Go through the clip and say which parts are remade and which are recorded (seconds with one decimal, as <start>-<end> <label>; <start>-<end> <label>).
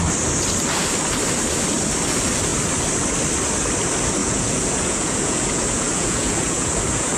0.0-4.2 recorded; 4.2-7.2 remade